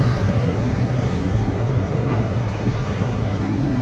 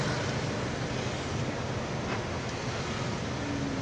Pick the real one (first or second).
second